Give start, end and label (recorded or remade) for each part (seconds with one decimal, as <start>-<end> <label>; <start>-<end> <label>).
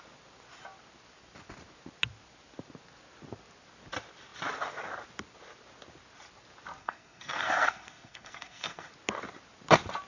0.0-6.8 recorded; 6.8-8.9 remade; 8.9-10.1 recorded